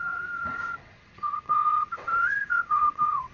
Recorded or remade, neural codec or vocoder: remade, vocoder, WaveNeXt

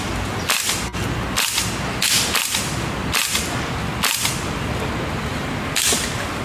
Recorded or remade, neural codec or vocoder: recorded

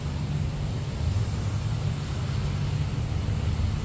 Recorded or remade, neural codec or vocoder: recorded